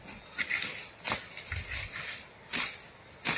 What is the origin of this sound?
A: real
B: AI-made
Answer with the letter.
A